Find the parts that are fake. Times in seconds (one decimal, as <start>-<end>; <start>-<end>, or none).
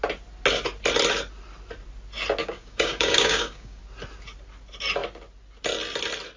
2.4-3.8